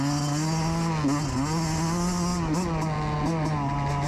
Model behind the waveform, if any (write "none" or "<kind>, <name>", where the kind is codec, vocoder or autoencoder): none